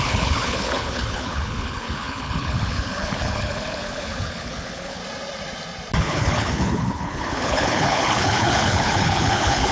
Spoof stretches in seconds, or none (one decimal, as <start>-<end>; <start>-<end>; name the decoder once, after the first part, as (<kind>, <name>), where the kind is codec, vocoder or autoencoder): 0.0-5.0 (codec, HILCodec); 6.0-9.7